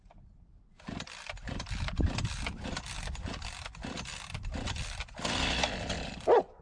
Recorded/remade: recorded